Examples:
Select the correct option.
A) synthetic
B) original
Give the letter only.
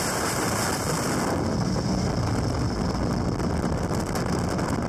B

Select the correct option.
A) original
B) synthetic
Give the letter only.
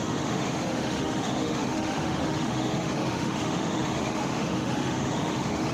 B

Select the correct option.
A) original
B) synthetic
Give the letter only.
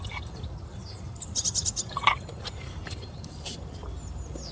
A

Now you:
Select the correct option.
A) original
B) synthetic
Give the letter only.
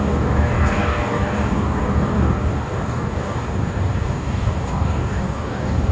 B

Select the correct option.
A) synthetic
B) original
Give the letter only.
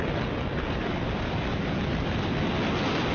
B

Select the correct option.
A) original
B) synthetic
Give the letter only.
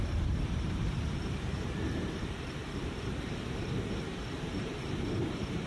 B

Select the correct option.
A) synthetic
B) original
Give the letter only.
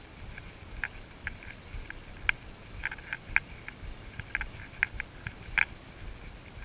B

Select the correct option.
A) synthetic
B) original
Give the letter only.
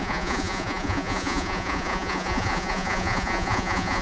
A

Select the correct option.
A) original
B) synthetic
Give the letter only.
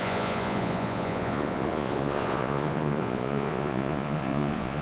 B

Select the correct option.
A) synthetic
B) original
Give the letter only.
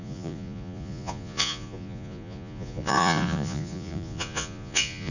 A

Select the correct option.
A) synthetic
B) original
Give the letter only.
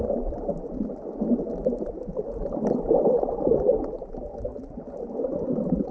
B